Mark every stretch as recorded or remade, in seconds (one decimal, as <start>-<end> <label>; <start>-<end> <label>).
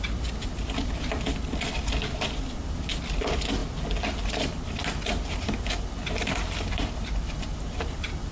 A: 0.0-8.3 recorded